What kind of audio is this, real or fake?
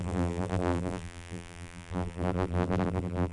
fake